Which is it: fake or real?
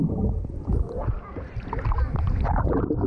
real